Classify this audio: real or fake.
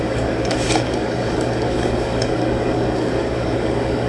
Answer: fake